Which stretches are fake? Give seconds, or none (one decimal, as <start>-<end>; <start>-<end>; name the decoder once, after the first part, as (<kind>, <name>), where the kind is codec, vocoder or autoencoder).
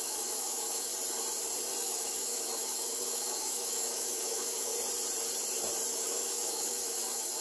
0.0-0.9 (autoencoder, DAC-VAE); 1.8-4.7; 5.9-7.4